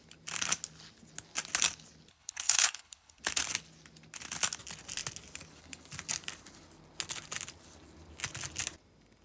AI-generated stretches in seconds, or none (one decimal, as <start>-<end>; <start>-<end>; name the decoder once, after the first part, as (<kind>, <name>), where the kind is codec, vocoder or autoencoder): 2.1-3.2 (codec, HILCodec)